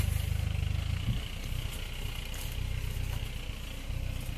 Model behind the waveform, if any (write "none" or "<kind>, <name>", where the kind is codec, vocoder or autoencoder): none